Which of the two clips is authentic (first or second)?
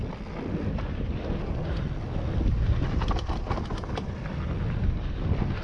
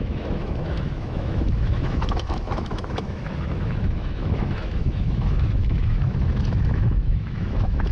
first